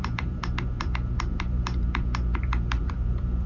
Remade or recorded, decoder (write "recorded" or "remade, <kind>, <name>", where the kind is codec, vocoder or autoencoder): remade, vocoder, BigVGAN v2